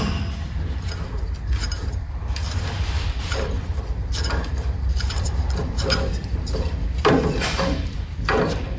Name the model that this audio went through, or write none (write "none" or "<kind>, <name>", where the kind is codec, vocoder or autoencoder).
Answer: vocoder, BigVGAN v2